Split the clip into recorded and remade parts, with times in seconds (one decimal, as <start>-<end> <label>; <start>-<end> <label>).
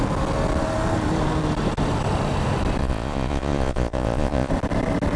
0.0-2.8 recorded; 2.8-4.5 remade; 4.5-5.2 recorded